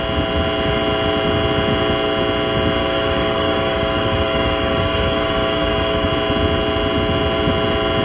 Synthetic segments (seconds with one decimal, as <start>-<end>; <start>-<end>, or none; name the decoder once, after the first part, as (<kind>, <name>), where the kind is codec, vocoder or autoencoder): 2.8-6.1 (codec, DAC)